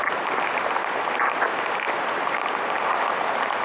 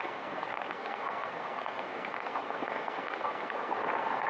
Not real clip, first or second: second